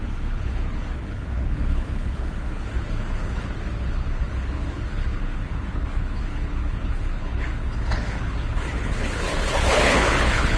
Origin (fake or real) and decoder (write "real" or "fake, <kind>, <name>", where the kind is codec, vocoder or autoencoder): fake, codec, HILCodec